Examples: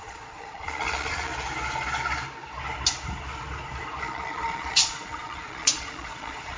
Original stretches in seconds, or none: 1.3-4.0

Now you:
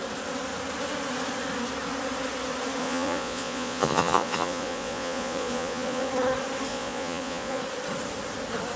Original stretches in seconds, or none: 0.0-2.8; 6.1-6.7; 7.6-8.8

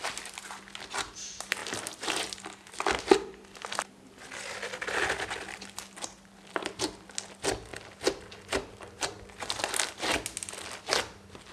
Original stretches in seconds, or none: 0.0-11.5

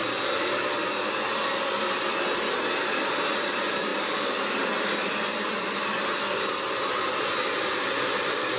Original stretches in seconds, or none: 0.0-8.6